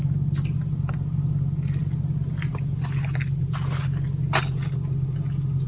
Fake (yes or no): no